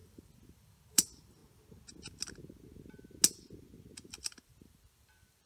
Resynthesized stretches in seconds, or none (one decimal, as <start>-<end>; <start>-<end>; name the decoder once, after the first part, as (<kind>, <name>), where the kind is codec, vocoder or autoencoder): 0.0-1.4 (vocoder, BigVGAN v2); 4.2-5.5